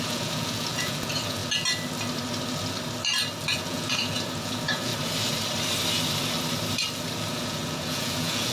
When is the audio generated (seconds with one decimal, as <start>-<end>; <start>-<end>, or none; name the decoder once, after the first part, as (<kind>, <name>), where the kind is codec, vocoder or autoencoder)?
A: 0.0-1.4 (vocoder, Vocos); 3.5-4.9; 7.3-8.5